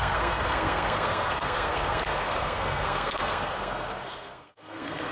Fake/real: fake